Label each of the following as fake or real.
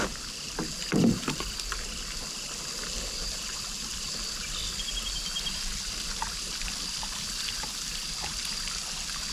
real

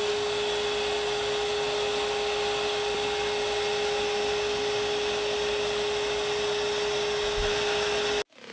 real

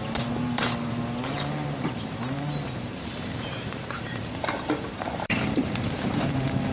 fake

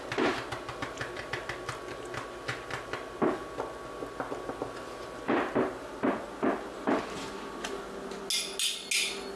real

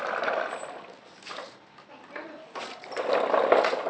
real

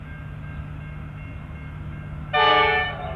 real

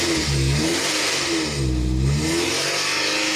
real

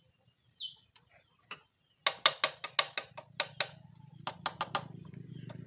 real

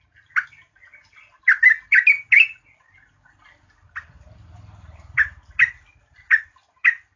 real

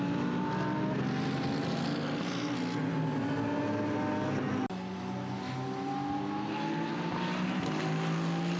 real